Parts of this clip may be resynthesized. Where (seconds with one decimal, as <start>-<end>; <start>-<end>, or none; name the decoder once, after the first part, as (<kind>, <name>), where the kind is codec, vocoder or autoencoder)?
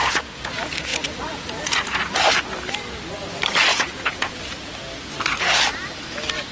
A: 0.0-0.5 (vocoder, Vocos); 0.9-2.2; 3.7-4.4